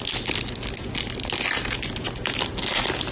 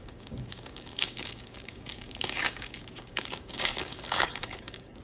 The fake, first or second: second